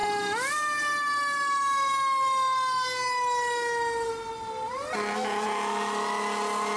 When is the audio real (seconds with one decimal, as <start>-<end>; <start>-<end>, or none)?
0.0-6.8